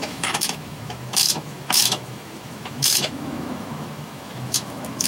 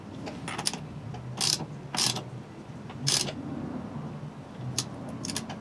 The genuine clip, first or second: second